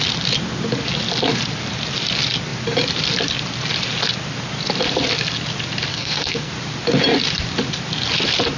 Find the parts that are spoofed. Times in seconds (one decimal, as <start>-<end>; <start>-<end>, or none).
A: 5.9-6.5